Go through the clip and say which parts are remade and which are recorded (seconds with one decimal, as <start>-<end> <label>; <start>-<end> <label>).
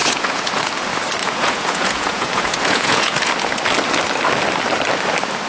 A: 0.0-0.7 remade; 0.7-1.2 recorded; 1.2-3.3 remade; 3.3-5.5 recorded